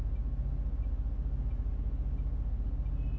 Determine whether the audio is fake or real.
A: real